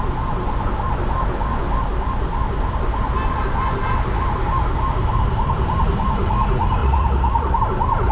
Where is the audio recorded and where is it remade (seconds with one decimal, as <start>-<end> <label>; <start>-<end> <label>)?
0.0-6.8 recorded; 6.8-7.6 remade; 7.6-8.1 recorded